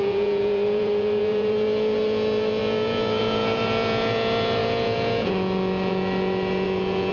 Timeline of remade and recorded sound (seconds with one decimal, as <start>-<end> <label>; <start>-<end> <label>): 0.0-7.1 remade